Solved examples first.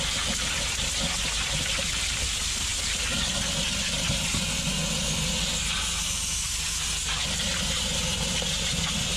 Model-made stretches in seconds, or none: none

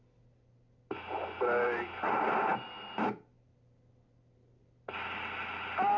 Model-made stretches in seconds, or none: none

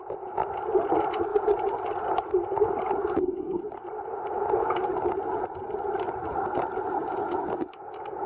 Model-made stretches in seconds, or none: none